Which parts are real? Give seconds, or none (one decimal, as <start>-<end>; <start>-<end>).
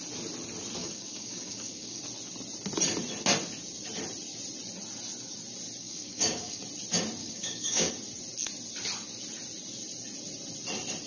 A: 0.0-0.8; 2.0-5.8; 6.6-7.2; 7.9-11.1